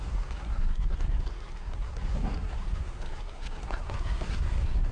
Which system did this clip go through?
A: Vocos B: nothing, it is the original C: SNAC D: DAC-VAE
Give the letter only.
C